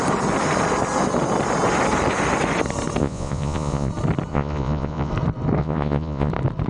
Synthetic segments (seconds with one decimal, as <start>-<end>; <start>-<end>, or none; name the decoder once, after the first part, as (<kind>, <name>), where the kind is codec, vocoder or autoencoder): 3.0-3.9 (vocoder, Vocos); 4.3-5.1; 5.6-6.3